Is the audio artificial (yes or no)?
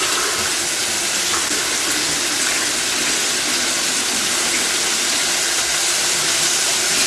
no